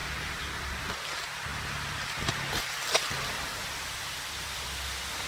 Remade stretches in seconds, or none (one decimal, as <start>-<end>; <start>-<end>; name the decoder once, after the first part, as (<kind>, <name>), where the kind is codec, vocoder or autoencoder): none